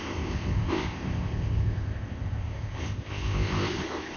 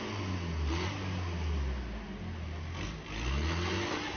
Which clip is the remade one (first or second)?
first